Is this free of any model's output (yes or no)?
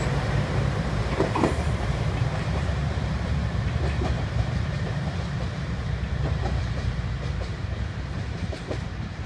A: no